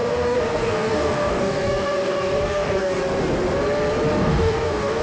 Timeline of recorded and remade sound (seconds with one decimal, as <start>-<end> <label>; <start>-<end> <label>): 0.0-3.0 remade; 3.0-4.2 recorded; 4.2-5.0 remade